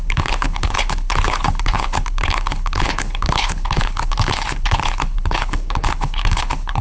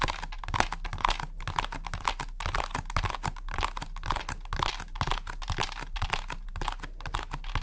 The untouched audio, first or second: second